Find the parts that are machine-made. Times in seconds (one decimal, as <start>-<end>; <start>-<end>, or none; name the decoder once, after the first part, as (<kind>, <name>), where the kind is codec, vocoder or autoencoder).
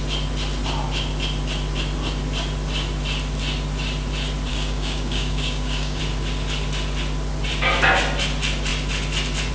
4.5-6.0 (codec, DAC)